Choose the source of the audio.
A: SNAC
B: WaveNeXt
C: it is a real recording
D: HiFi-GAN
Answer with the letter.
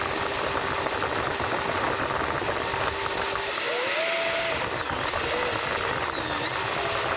C